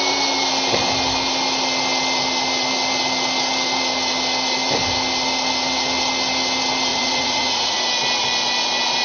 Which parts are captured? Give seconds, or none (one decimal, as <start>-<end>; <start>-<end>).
0.0-6.9; 7.8-9.0